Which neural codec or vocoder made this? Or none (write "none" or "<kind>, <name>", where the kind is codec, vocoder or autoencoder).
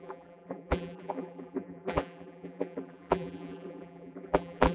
vocoder, BigVGAN v2